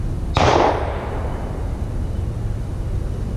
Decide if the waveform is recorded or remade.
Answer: recorded